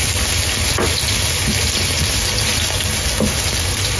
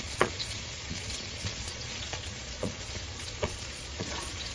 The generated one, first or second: second